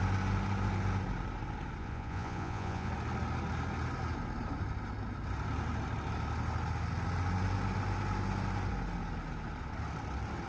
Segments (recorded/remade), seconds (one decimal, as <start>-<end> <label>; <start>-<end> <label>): 0.0-1.8 recorded; 1.8-2.9 remade; 2.9-10.5 recorded